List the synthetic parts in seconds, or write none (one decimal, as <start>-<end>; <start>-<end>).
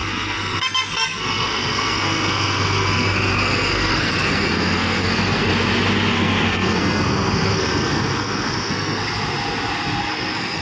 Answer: 0.0-5.5; 6.1-9.0; 10.0-10.6